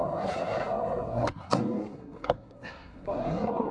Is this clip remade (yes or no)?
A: yes